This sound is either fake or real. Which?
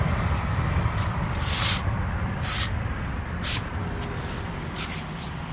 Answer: fake